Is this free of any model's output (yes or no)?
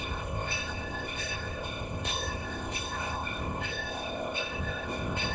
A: no